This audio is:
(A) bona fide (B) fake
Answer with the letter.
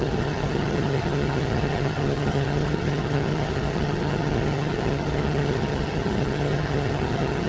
B